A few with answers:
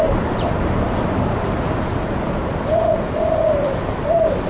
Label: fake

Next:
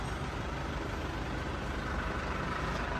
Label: fake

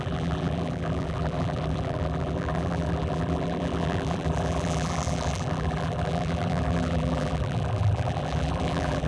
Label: fake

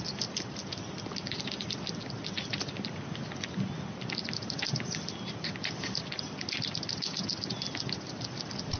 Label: real